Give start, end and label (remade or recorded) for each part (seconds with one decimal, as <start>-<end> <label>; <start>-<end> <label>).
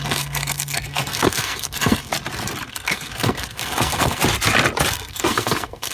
0.0-2.1 remade; 2.1-2.7 recorded; 2.7-4.2 remade; 4.2-4.9 recorded; 4.9-5.9 remade